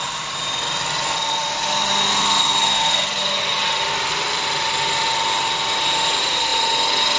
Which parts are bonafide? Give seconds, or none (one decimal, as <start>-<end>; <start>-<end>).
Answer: 0.0-7.2